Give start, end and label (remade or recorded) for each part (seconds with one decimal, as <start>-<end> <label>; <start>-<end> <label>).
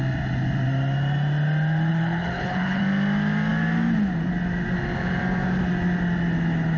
0.0-1.9 recorded; 1.9-2.8 remade; 2.8-6.8 recorded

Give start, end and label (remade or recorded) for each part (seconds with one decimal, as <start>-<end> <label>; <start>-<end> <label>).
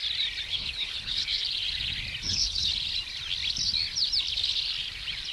0.0-0.5 recorded; 0.5-1.4 remade; 1.4-2.3 recorded; 2.3-2.7 remade; 2.7-5.3 recorded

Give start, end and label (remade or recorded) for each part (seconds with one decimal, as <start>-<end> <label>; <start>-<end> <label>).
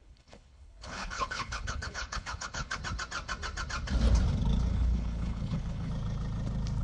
0.0-2.8 remade; 2.8-4.7 recorded; 4.7-5.9 remade; 5.9-6.8 recorded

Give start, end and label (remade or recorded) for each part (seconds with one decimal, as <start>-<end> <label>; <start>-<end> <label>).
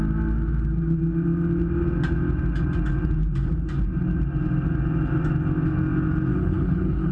0.0-6.3 recorded; 6.3-7.1 remade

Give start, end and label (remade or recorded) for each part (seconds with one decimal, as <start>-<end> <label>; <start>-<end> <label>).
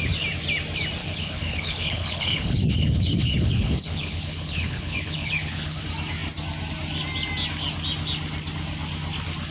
0.0-1.0 recorded; 1.0-5.8 remade; 5.8-9.5 recorded